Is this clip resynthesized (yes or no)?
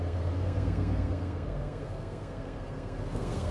yes